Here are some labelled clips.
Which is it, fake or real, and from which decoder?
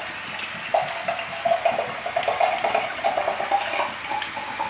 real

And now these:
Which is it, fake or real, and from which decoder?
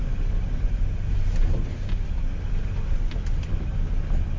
real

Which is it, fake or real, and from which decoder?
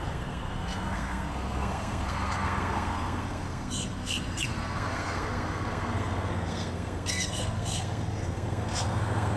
fake, codec, SNAC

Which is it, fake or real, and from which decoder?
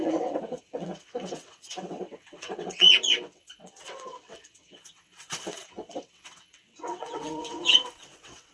fake, vocoder, WaveNeXt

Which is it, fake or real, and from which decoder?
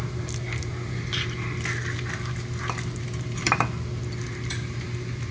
real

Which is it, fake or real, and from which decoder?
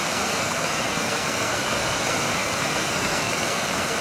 fake, codec, SNAC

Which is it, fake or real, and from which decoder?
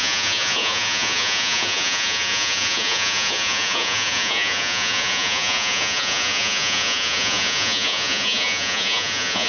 fake, vocoder, Vocos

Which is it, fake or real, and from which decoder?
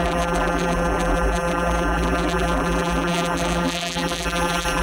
fake, vocoder, BigVGAN v2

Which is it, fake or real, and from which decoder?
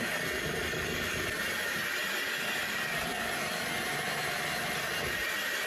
fake, vocoder, BigVGAN v2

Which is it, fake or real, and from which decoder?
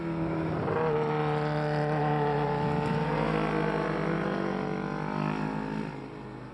real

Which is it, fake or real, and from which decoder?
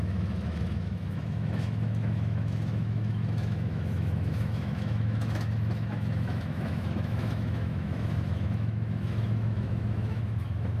fake, autoencoder, DAC-VAE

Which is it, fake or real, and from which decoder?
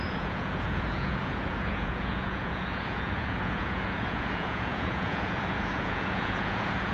fake, vocoder, Vocos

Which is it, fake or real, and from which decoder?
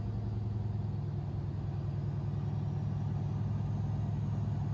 real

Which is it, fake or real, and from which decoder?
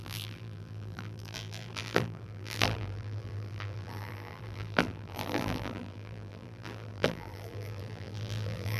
fake, vocoder, BigVGAN v2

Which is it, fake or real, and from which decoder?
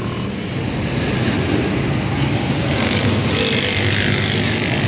real